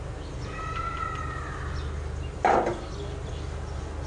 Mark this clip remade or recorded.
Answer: recorded